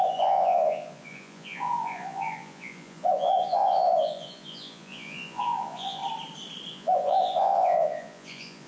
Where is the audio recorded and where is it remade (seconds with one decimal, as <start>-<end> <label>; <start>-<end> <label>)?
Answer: 0.0-6.0 remade; 6.0-6.7 recorded; 6.7-8.7 remade